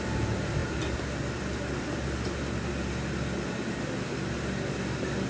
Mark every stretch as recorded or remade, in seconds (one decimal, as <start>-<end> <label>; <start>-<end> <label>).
0.0-5.3 recorded